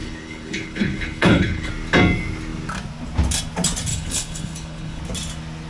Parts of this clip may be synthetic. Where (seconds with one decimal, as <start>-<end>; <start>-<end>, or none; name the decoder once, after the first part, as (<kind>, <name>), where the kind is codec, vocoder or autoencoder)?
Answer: 0.0-1.7 (codec, HILCodec); 3.9-5.0